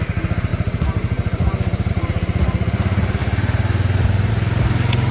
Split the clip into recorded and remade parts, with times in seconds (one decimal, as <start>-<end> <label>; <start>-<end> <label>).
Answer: 0.0-5.1 recorded

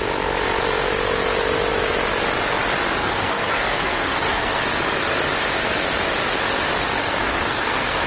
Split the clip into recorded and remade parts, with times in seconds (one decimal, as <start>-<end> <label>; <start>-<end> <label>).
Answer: 0.0-3.0 recorded; 3.0-4.6 remade; 4.6-7.0 recorded; 7.0-8.1 remade

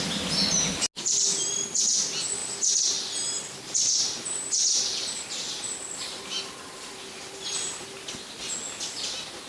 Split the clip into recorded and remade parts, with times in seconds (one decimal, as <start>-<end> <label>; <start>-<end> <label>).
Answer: 0.0-9.5 recorded

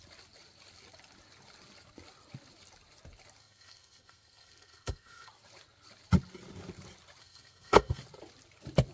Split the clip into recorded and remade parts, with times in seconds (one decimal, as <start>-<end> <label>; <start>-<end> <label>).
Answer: 0.0-3.4 recorded; 3.4-5.3 remade; 5.3-7.2 recorded; 7.2-8.0 remade; 8.0-8.9 recorded

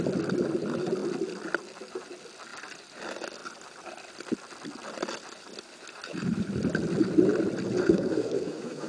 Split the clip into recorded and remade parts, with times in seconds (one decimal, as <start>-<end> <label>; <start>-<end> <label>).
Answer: 0.0-7.8 recorded; 7.8-8.9 remade

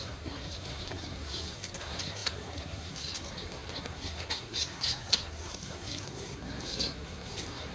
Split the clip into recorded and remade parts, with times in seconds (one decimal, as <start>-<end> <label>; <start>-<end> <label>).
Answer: 0.0-7.7 remade

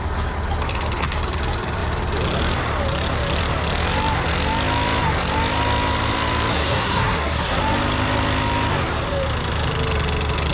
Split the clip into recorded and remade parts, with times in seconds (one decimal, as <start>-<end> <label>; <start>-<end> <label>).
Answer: 0.0-6.5 recorded; 6.5-7.6 remade; 7.6-10.5 recorded

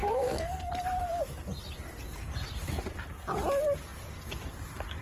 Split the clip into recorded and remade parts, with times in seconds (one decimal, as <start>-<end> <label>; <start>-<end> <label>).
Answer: 0.0-0.7 remade; 0.7-5.0 recorded